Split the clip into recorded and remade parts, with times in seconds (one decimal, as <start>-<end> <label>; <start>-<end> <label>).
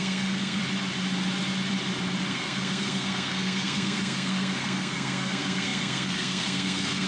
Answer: 0.0-0.6 remade; 0.6-2.3 recorded; 2.3-7.1 remade